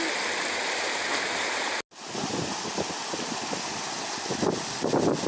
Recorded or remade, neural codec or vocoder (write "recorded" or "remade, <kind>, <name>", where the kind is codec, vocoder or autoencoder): recorded